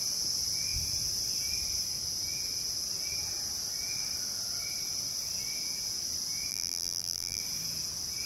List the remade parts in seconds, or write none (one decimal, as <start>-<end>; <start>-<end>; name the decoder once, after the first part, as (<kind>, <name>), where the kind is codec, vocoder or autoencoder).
6.5-7.4 (vocoder, BigVGAN v2)